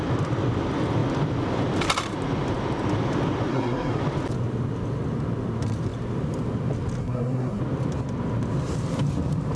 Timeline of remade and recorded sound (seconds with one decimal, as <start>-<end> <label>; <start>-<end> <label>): 0.0-3.5 recorded; 3.5-4.0 remade; 4.0-7.0 recorded; 7.0-7.6 remade; 7.6-9.6 recorded